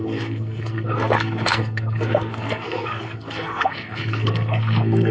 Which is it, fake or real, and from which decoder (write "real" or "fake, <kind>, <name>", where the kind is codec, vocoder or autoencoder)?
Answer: fake, codec, SNAC